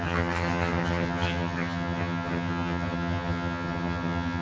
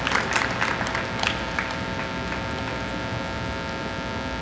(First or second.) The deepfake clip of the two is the first